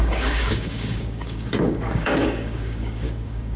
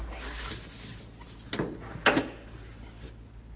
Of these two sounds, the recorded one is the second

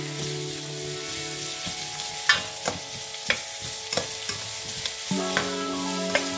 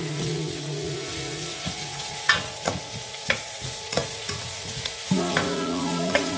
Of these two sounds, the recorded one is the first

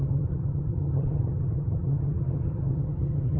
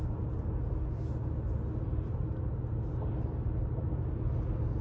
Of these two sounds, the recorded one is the second